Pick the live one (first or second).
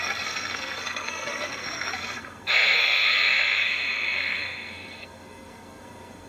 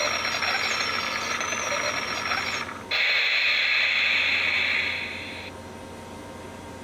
second